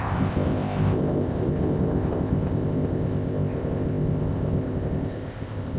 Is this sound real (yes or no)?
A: no